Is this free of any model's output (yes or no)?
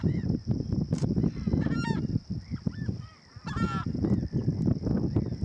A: yes